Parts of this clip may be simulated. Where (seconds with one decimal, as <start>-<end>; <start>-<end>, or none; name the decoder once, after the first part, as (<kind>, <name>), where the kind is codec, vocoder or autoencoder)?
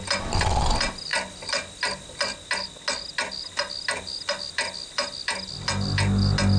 none